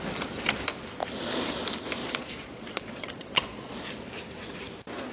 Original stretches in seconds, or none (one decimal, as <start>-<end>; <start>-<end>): 0.0-2.0; 3.7-5.1